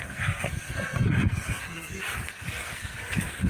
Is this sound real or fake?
fake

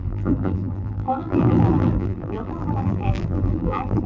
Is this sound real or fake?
fake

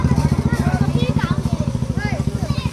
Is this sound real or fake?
real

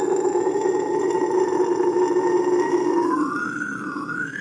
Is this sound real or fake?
real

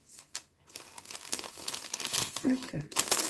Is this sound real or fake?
fake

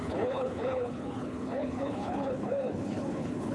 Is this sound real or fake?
fake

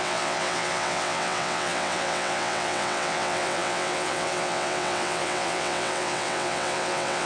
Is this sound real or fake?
fake